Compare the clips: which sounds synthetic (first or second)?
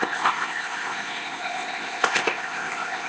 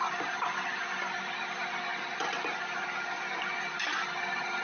first